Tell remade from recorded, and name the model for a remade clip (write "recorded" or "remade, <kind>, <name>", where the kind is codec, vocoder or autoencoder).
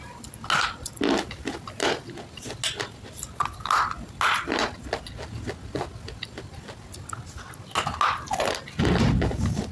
recorded